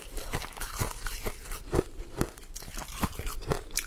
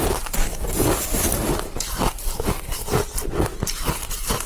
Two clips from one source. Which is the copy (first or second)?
first